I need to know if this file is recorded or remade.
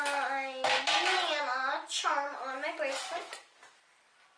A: recorded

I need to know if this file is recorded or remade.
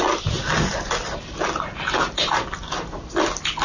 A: recorded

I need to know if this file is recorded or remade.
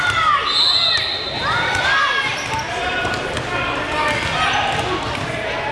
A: recorded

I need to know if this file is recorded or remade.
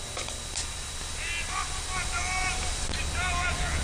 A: recorded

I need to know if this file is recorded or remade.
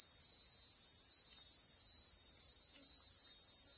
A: recorded